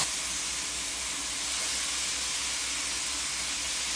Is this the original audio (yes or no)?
yes